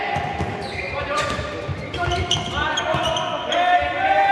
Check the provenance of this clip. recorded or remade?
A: recorded